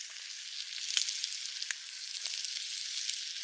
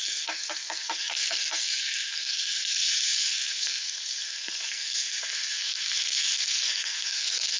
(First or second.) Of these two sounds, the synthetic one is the second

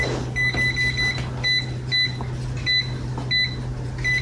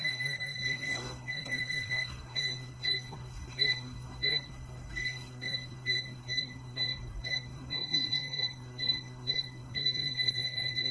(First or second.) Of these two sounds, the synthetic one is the second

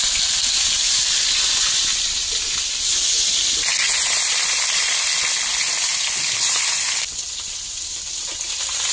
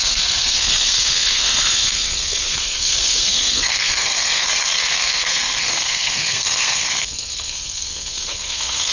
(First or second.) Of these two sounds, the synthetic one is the second